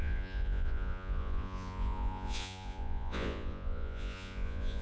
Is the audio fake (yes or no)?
yes